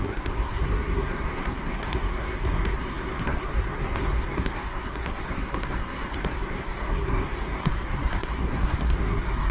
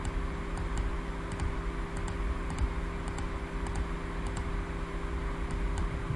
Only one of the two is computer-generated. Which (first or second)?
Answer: first